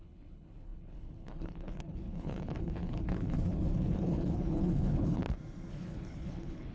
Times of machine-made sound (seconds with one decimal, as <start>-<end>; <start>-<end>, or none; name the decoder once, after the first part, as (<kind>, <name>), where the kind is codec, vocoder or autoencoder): 0.0-5.2 (codec, HILCodec); 5.7-6.7